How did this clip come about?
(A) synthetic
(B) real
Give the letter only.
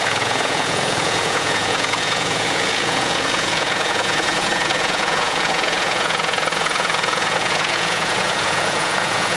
A